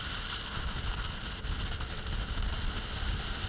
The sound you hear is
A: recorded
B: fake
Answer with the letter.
A